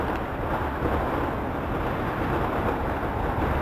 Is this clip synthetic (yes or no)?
no